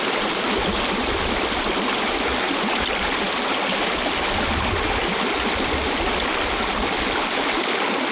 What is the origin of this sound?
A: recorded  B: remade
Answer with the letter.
A